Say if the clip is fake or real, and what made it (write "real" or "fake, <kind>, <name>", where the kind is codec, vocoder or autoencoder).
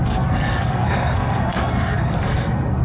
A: fake, codec, SNAC